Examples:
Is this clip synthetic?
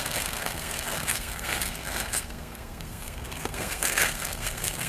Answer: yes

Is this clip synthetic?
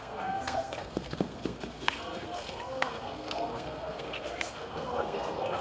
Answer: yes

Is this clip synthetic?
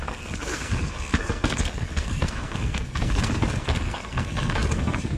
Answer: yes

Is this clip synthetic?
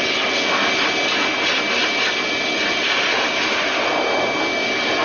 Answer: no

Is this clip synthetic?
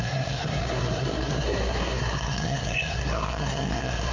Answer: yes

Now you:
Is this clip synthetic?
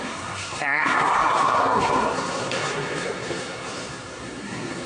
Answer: yes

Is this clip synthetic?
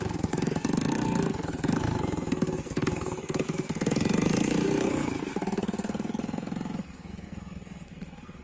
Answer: yes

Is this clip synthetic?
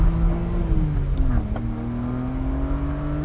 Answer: no